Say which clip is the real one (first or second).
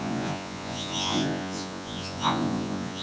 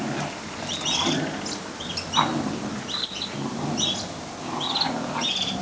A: second